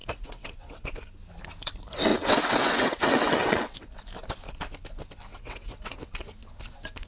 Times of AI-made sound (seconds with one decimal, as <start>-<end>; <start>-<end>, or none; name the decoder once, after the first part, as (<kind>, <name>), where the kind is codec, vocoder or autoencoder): 0.0-0.9 (vocoder, WaveNeXt); 2.1-3.9; 5.3-6.1